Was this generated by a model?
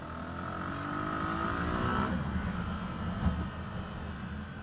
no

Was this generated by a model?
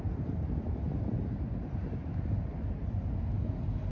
no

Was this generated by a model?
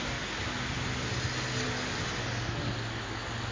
no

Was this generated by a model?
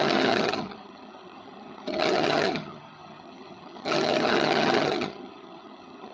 yes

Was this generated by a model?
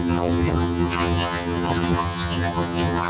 yes